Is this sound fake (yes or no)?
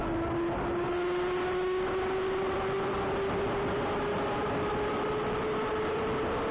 no